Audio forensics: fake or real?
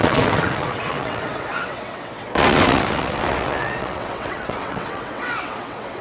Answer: fake